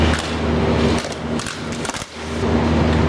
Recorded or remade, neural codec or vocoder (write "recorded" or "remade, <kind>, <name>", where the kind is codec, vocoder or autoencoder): recorded